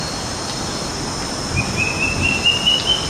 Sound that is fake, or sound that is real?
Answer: real